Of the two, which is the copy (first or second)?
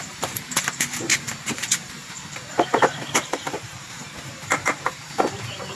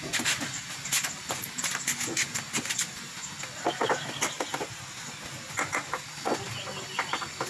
first